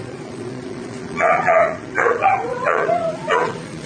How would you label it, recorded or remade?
remade